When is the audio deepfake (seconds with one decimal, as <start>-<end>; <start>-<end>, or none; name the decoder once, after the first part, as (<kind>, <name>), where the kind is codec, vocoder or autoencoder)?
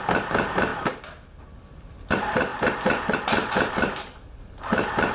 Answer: none